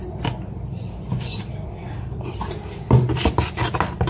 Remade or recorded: remade